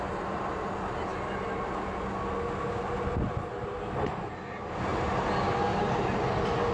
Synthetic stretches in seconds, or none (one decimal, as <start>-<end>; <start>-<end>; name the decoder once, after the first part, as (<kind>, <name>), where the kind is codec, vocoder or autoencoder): none